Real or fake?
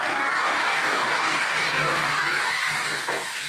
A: fake